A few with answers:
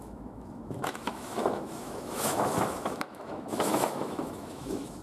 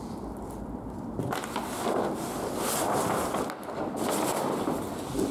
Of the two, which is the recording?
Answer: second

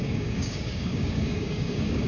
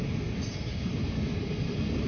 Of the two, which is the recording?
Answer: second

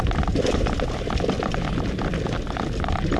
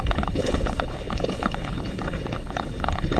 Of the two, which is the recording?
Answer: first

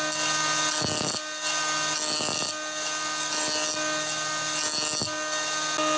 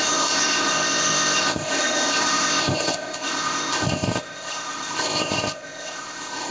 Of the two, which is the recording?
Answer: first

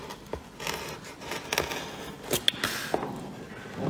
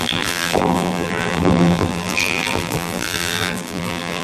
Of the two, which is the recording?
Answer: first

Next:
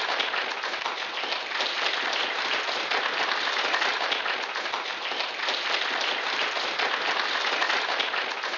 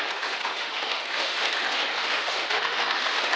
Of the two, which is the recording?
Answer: first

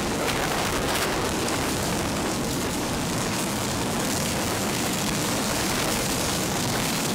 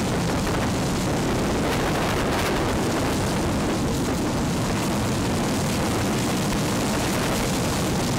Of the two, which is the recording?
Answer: second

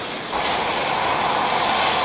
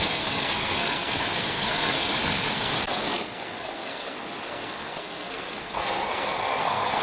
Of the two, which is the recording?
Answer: first